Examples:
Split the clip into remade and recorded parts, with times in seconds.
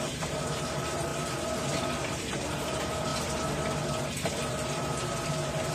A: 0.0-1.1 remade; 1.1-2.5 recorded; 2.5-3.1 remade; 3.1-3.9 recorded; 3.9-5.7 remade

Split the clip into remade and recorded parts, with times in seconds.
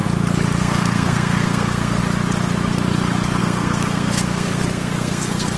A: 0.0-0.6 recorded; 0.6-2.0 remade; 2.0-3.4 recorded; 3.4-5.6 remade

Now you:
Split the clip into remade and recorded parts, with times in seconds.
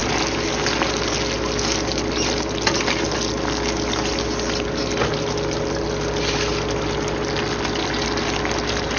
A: 0.0-9.0 recorded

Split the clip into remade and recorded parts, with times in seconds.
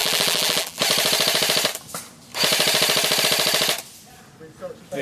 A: 0.0-0.8 remade; 0.8-5.0 recorded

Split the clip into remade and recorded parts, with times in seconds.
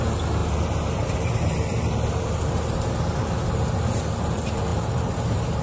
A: 0.0-4.7 recorded; 4.7-5.6 remade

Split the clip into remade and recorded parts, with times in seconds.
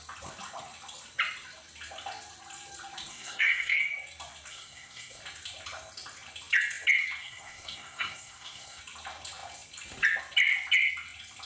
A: 0.0-3.1 recorded; 3.1-3.8 remade; 3.8-4.5 recorded; 4.5-5.2 remade; 5.2-7.2 recorded; 7.2-8.8 remade; 8.8-11.5 recorded